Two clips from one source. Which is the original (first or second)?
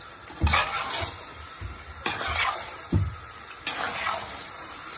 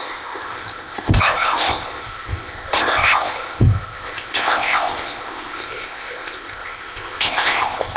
first